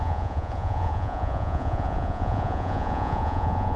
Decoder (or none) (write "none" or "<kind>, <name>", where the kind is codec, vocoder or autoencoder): vocoder, Vocos